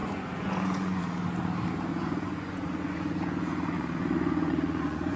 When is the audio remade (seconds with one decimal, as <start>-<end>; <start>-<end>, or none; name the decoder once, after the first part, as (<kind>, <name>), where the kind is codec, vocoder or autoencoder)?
0.0-1.0 (vocoder, Vocos); 1.9-5.2